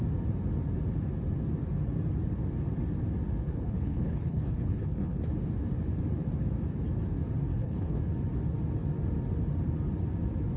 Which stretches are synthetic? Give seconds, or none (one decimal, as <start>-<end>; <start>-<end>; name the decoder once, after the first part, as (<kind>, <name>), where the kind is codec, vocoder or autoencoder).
3.4-5.2 (codec, HILCodec); 7.5-8.0